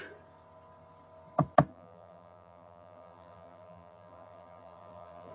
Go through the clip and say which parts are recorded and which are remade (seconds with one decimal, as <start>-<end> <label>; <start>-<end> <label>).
0.0-1.7 recorded; 1.7-5.3 remade